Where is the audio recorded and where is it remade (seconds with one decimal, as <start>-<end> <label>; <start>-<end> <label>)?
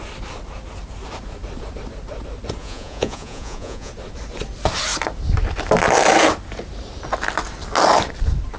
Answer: 0.0-2.6 recorded; 2.6-3.9 remade; 3.9-8.6 recorded